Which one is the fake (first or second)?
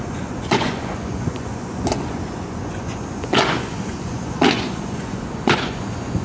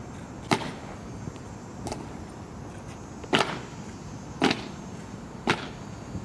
first